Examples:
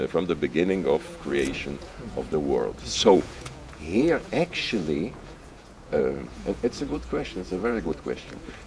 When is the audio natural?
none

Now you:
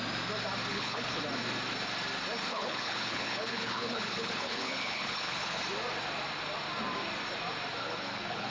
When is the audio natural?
0.0-0.7; 1.2-2.5; 5.6-7.8

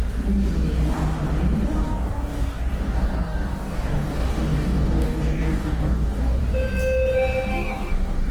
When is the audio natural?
0.0-1.8; 6.4-7.5

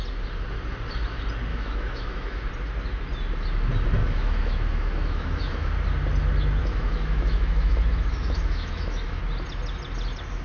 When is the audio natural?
0.0-1.5; 2.4-4.0; 5.7-6.6; 9.2-10.4